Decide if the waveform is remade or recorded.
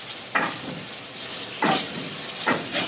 recorded